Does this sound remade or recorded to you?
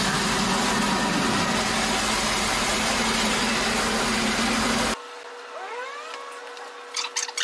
recorded